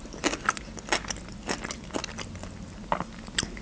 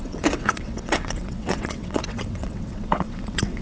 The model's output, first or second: second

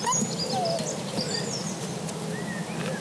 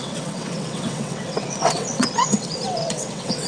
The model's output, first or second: second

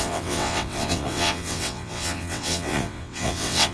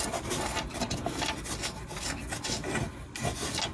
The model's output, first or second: first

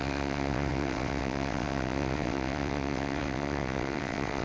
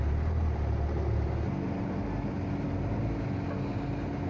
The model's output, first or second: first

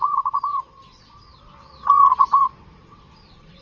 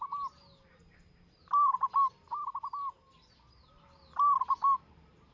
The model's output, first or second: first